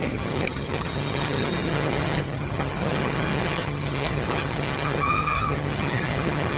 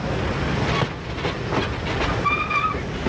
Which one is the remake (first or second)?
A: first